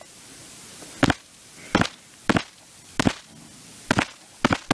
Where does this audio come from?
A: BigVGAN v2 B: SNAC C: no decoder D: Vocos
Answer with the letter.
C